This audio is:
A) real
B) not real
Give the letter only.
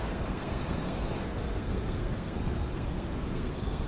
B